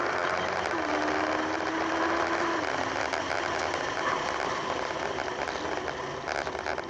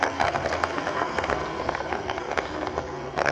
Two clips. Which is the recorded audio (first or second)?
first